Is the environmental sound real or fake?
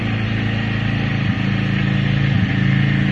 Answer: real